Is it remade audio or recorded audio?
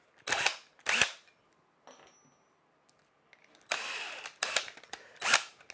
recorded